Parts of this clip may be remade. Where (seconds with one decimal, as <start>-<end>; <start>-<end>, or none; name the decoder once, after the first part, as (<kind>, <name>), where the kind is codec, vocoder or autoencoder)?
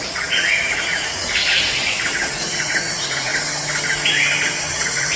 0.0-1.4 (vocoder, Vocos); 2.3-3.3; 4.7-5.2